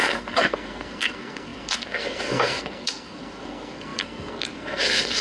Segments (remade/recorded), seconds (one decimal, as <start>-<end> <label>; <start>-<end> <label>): 0.0-5.2 remade